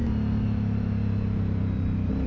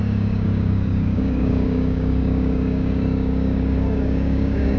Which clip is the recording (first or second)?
first